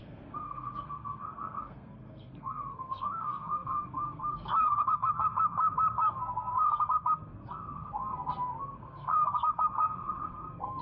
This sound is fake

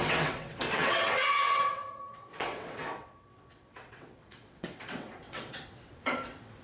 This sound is fake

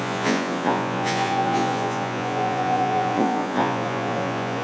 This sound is fake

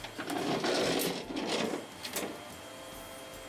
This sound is real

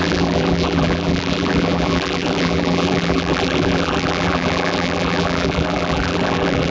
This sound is fake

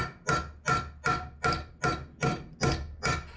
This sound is real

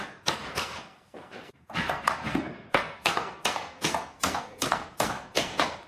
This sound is fake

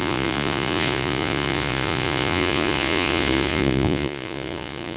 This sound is fake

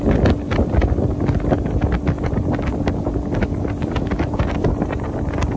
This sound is real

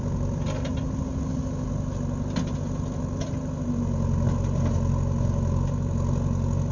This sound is real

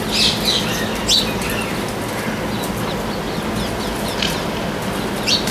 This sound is real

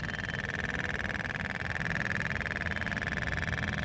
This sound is real